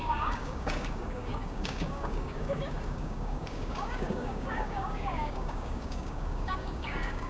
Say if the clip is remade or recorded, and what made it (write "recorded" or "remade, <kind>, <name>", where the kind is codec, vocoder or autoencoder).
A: remade, codec, DAC